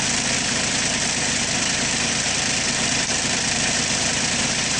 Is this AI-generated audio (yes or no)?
no